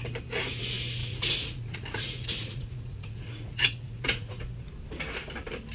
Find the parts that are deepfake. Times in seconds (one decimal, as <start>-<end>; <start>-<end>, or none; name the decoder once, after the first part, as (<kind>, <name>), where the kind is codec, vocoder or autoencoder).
1.0-4.4 (vocoder, Vocos)